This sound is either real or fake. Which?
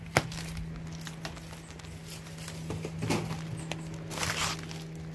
real